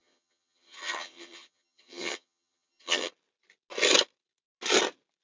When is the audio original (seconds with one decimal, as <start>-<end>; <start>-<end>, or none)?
3.1-5.2